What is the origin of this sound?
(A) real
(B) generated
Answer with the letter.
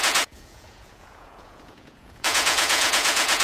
B